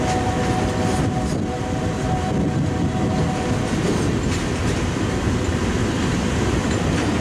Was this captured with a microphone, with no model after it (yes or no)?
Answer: yes